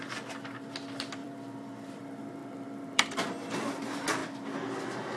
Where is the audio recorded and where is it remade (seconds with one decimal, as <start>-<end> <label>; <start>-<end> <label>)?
0.0-1.2 recorded; 1.2-2.0 remade; 2.0-2.4 recorded; 2.4-3.3 remade; 3.3-5.2 recorded